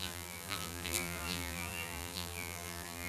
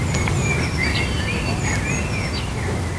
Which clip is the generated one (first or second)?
first